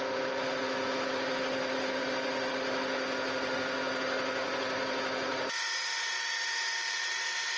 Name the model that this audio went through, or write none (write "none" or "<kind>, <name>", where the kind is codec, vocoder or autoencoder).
none